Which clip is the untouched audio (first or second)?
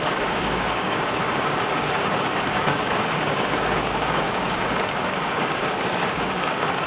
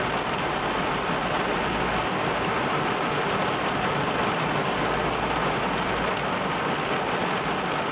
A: second